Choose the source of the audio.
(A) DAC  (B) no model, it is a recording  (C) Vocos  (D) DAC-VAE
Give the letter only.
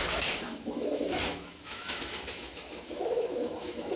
D